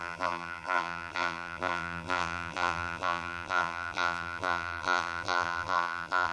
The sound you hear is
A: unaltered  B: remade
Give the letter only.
B